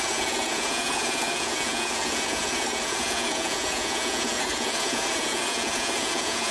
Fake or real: fake